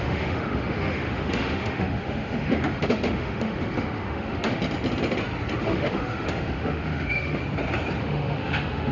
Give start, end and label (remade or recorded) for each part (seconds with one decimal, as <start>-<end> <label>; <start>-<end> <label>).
0.0-4.6 remade; 4.6-5.6 recorded; 5.6-7.4 remade; 7.4-8.0 recorded; 8.0-8.9 remade